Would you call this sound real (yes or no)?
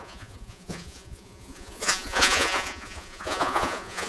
no